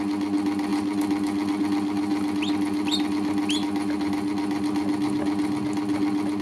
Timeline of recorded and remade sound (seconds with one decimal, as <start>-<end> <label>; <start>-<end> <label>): 0.0-6.4 recorded